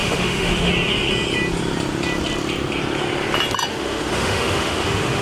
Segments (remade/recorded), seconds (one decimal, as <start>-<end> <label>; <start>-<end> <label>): 0.0-0.7 remade; 0.7-3.7 recorded; 3.7-5.2 remade